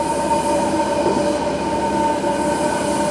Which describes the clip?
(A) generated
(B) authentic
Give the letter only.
B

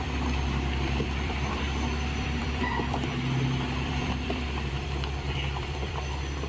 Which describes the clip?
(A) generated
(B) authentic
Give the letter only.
A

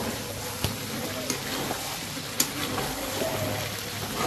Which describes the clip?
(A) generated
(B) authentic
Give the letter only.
B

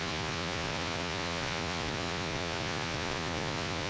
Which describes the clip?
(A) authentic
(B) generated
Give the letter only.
B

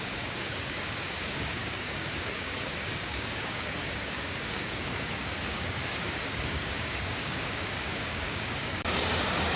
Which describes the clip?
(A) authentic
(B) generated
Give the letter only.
B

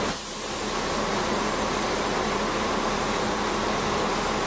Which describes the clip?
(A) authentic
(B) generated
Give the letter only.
A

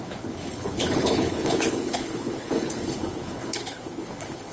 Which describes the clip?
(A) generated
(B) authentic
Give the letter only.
A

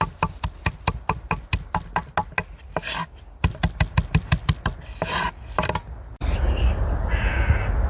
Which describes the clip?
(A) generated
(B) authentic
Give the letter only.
B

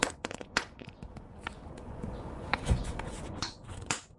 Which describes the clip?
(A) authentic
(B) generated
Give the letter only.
B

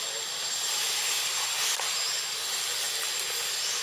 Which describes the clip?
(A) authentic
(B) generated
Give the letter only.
A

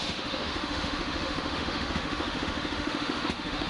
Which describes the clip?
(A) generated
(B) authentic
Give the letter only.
A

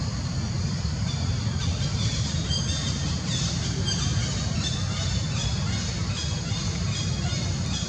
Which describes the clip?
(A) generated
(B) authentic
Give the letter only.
B